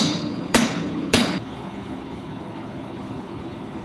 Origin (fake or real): fake